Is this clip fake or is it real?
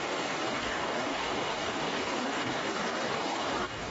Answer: fake